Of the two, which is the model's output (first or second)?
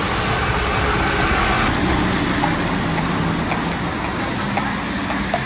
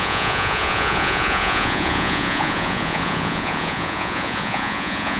second